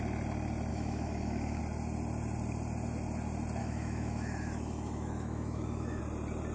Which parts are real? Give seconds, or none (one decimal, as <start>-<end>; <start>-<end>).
0.0-0.7; 1.6-3.6; 6.0-6.5